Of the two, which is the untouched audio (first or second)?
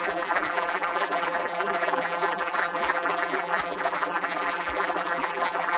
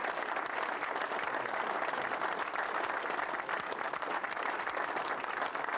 second